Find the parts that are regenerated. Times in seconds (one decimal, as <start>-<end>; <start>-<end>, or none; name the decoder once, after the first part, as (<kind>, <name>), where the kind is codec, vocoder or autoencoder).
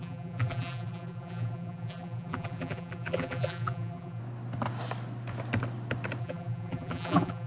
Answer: 0.0-4.2 (vocoder, BigVGAN v2); 6.2-7.5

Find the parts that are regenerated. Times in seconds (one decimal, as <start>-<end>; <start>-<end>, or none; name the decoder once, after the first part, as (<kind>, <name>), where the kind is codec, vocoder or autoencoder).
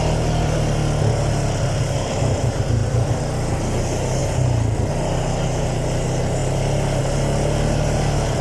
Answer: 0.0-0.8 (vocoder, BigVGAN v2); 1.3-4.2; 4.9-6.4; 7.0-8.4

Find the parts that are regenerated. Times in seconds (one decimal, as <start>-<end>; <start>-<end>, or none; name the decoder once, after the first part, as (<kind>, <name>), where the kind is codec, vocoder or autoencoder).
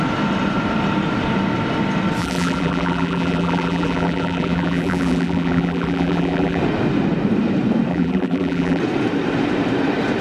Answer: 2.2-6.6 (vocoder, BigVGAN v2); 7.9-8.8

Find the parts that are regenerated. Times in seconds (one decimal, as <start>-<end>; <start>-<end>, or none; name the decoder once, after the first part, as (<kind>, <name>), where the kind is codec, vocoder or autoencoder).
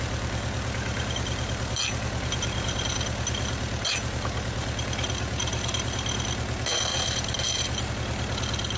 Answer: 6.9-7.9 (vocoder, BigVGAN v2)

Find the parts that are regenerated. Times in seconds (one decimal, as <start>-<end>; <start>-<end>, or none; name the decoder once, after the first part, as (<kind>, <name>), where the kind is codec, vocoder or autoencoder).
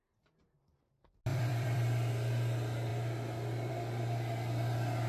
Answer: 1.3-2.1 (vocoder, BigVGAN v2)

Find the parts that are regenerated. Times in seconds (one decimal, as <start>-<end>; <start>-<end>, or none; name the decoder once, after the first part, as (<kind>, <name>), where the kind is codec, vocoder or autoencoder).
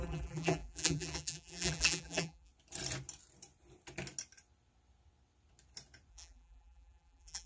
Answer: 0.0-2.5 (vocoder, BigVGAN v2); 6.1-7.5